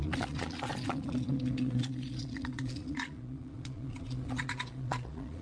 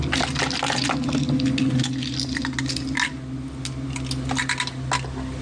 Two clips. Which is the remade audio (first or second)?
first